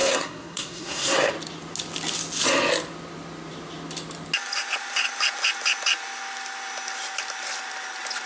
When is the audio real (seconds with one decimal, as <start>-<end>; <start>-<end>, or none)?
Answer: 1.3-8.3